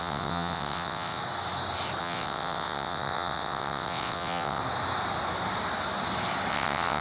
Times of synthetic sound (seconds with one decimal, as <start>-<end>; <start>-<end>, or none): 0.0-1.2; 2.0-4.6; 6.5-7.0